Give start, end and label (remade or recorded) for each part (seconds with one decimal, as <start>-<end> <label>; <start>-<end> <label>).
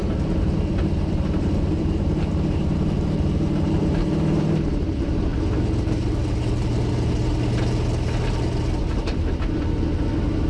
0.0-4.6 remade; 4.6-10.5 recorded